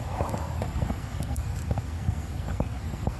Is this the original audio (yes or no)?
no